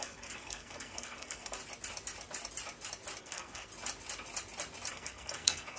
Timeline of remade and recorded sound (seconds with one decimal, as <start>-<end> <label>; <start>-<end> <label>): 0.0-1.6 remade; 1.6-3.2 recorded; 3.2-3.7 remade; 3.7-4.9 recorded; 4.9-5.8 remade